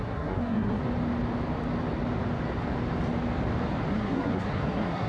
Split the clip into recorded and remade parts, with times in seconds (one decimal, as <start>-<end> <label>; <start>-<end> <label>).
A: 0.0-0.8 remade; 0.8-3.9 recorded; 3.9-5.1 remade